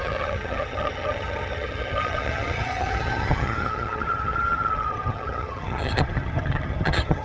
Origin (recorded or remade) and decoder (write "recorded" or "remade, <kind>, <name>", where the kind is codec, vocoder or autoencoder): remade, vocoder, HiFi-GAN